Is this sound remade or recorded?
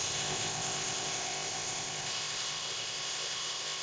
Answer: remade